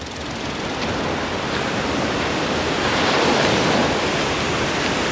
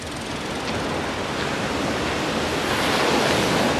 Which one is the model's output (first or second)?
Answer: first